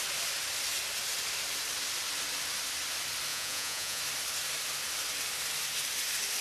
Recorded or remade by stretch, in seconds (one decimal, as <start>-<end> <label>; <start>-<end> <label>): 0.0-3.3 recorded; 3.3-4.0 remade; 4.0-6.4 recorded